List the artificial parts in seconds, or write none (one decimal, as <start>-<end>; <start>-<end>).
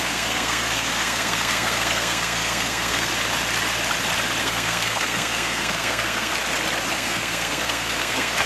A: 0.0-3.1; 4.4-6.3; 6.9-8.5